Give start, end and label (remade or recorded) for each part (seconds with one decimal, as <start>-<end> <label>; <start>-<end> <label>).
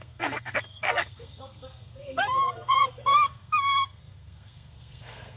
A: 0.0-5.4 remade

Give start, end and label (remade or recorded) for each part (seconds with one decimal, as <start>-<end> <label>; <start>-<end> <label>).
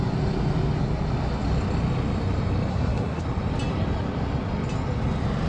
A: 0.0-2.7 recorded; 2.7-3.2 remade; 3.2-5.5 recorded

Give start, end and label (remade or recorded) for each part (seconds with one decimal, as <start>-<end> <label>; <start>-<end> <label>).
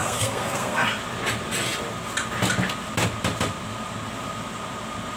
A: 0.0-0.8 remade; 0.8-5.2 recorded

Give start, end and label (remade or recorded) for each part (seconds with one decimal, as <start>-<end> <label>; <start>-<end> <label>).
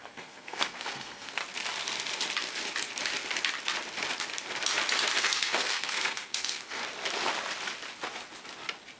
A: 0.0-1.4 remade; 1.4-5.2 recorded; 5.2-6.8 remade; 6.8-9.0 recorded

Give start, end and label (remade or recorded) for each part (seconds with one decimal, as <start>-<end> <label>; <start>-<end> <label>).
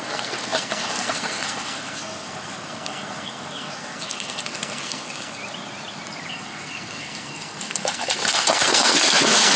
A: 0.0-5.4 remade; 5.4-6.3 recorded; 6.3-9.6 remade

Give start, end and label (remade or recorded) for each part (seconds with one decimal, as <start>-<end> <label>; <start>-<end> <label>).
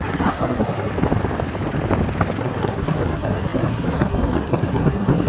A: 0.0-0.9 remade; 0.9-2.4 recorded; 2.4-5.3 remade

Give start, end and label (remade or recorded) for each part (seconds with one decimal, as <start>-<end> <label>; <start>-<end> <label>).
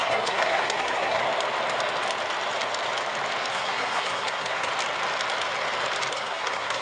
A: 0.0-1.2 remade; 1.2-3.5 recorded; 3.5-4.7 remade; 4.7-6.1 recorded; 6.1-6.8 remade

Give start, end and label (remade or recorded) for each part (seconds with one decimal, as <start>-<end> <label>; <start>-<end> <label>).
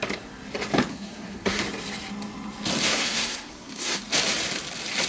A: 0.0-0.9 recorded; 0.9-1.6 remade; 1.6-2.9 recorded; 2.9-4.0 remade; 4.0-5.1 recorded